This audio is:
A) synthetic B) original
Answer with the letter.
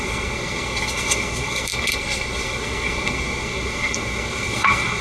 A